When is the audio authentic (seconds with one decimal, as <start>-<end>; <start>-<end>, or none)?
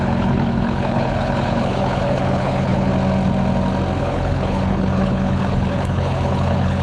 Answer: 2.9-4.0